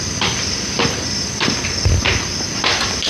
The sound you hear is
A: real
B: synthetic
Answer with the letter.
A